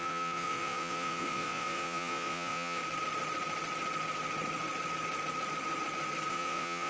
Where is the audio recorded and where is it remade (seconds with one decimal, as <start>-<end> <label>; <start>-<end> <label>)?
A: 0.0-2.8 remade; 2.8-6.3 recorded; 6.3-6.9 remade